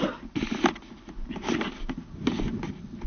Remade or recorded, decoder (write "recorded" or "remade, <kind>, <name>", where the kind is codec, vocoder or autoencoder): recorded